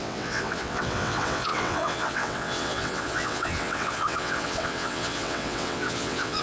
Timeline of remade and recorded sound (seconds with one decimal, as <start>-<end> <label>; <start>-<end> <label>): 0.0-6.4 remade